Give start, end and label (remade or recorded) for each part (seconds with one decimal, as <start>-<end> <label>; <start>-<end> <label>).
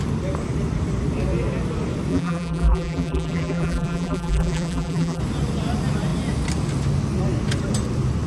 0.0-2.1 recorded; 2.1-5.2 remade; 5.2-8.3 recorded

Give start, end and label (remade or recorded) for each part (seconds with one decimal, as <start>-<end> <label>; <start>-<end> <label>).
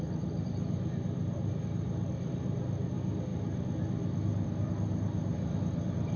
0.0-3.3 recorded; 3.3-4.7 remade; 4.7-5.3 recorded; 5.3-6.2 remade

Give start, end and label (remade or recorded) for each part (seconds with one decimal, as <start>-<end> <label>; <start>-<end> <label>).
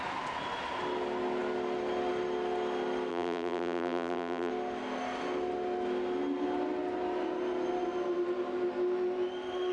0.0-3.1 recorded; 3.1-4.5 remade; 4.5-9.7 recorded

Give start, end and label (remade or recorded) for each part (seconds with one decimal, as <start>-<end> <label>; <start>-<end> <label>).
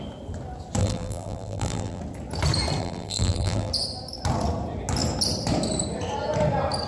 0.0-0.8 recorded; 0.8-2.0 remade; 2.0-2.8 recorded; 2.8-3.7 remade; 3.7-6.9 recorded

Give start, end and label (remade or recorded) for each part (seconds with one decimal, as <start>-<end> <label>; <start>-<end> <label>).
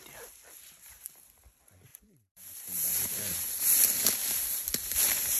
0.0-1.9 recorded; 1.9-3.5 remade; 3.5-4.2 recorded; 4.2-5.4 remade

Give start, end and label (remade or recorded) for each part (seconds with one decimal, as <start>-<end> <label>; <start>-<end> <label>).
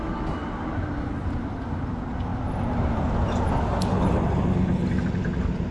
0.0-5.7 recorded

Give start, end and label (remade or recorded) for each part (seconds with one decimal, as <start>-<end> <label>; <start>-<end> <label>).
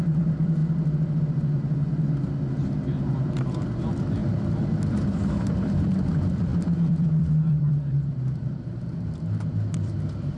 0.0-0.6 remade; 0.6-3.8 recorded; 3.8-4.2 remade; 4.2-5.0 recorded; 5.0-10.4 remade